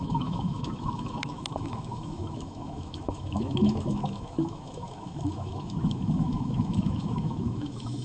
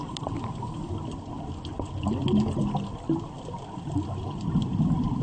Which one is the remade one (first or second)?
first